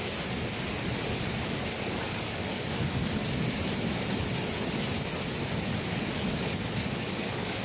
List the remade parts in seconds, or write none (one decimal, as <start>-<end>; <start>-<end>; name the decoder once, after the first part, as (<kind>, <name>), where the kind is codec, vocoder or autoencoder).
1.4-3.2 (codec, DAC); 5.7-7.6